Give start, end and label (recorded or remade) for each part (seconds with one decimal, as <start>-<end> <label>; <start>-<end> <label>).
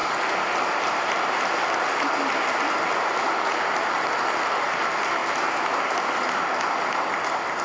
0.0-7.6 recorded